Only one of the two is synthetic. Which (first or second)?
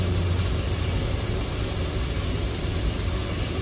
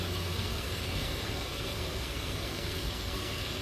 second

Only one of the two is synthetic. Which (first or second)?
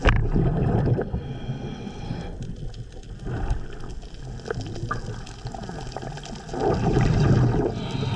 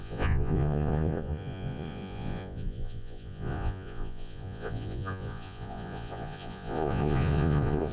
second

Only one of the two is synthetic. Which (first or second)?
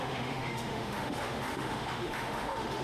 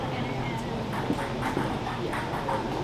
first